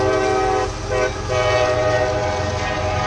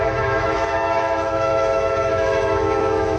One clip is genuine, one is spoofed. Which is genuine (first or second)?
first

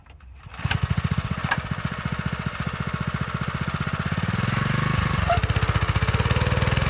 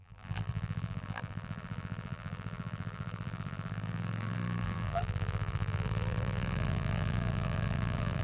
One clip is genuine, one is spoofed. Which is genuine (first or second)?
first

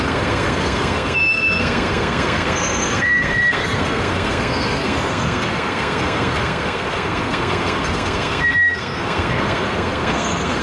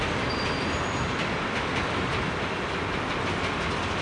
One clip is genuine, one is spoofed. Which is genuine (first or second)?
second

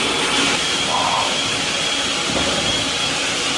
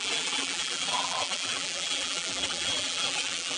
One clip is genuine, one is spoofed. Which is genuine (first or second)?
first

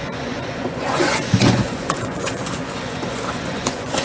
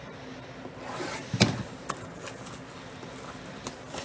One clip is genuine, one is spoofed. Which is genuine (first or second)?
second